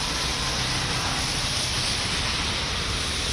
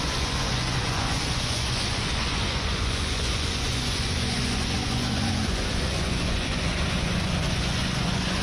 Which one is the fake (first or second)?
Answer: second